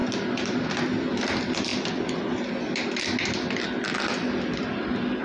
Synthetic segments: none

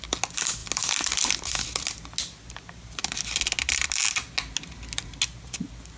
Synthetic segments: none

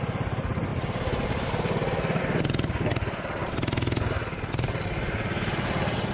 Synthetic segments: none

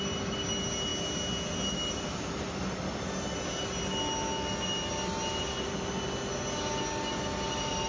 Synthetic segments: none

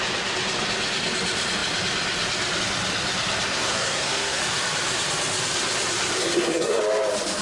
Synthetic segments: 3.5-4.4 (codec, SNAC); 6.2-6.8

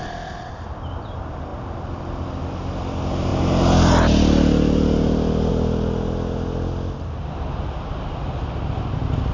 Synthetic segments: none